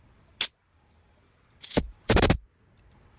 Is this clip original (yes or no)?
yes